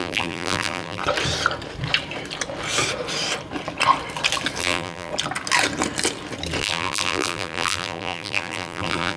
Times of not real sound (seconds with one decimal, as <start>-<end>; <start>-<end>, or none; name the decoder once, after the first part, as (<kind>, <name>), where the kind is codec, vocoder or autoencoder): 0.0-1.0 (vocoder, BigVGAN v2); 4.6-5.1; 6.6-9.2